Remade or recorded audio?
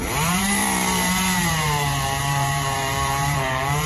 remade